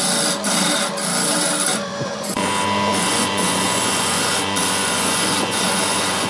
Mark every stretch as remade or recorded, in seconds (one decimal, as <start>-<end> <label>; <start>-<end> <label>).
0.0-1.7 recorded; 1.7-2.5 remade; 2.5-2.9 recorded; 2.9-6.3 remade